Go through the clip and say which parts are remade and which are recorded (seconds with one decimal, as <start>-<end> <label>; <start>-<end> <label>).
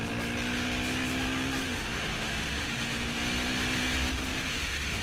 0.0-1.6 recorded; 1.6-3.2 remade; 3.2-4.1 recorded; 4.1-5.0 remade